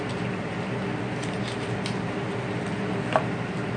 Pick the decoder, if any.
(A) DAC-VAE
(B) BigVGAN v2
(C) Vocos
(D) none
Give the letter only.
D